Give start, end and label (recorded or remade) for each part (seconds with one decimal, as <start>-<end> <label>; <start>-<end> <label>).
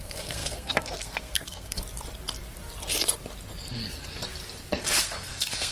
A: 0.0-1.8 remade; 1.8-5.0 recorded; 5.0-5.7 remade